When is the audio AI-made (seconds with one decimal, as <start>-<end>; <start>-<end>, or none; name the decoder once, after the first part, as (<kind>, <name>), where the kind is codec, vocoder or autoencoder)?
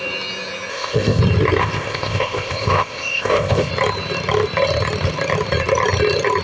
0.7-1.2 (codec, ZipCodec); 1.6-3.7